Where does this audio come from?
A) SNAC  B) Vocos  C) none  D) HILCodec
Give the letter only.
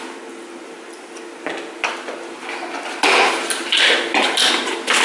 C